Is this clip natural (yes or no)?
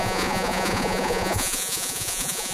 no